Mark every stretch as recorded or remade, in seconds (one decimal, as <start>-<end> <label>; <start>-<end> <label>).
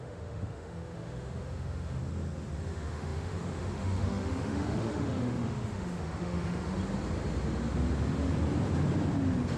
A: 0.0-2.0 remade; 2.0-2.6 recorded; 2.6-6.8 remade; 6.8-9.6 recorded